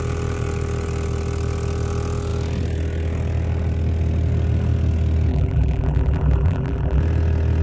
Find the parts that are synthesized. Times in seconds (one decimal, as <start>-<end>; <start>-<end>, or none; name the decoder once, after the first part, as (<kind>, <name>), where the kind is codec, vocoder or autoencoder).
5.3-7.0 (vocoder, BigVGAN v2)

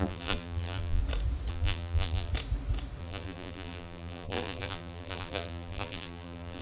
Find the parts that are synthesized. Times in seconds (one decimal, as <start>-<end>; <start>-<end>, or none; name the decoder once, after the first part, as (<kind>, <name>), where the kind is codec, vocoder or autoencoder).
0.0-1.0 (vocoder, BigVGAN v2); 1.5-2.3; 3.0-6.6

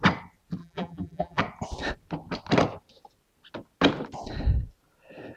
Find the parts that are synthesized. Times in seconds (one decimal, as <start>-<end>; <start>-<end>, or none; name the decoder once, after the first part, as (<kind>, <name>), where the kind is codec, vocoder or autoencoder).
0.6-1.4 (vocoder, BigVGAN v2)

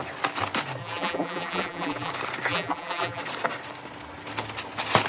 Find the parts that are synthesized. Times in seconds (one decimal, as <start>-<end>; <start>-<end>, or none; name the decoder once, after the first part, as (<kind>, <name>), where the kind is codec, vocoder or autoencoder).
0.8-2.1 (vocoder, BigVGAN v2); 2.5-3.2

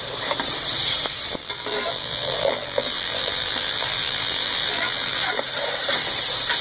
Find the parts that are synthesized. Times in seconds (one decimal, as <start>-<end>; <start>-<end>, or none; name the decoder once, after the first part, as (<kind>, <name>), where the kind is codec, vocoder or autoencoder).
1.4-5.4 (vocoder, BigVGAN v2)

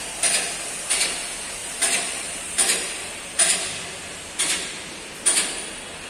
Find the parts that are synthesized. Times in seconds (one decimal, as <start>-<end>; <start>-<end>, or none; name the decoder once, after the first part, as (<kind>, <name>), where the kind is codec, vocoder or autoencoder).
1.6-3.3 (vocoder, BigVGAN v2)

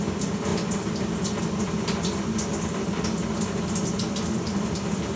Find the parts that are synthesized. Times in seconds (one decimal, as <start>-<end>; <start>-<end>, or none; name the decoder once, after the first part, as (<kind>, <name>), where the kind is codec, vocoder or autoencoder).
none

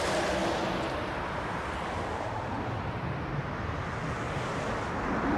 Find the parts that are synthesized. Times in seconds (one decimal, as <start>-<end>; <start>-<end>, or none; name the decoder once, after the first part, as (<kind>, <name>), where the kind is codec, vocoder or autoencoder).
none